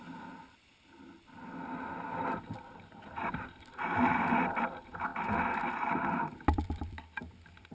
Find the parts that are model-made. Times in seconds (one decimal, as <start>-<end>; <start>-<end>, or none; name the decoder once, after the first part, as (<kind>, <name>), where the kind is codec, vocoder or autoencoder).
none